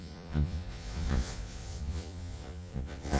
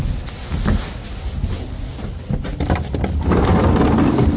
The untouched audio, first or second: second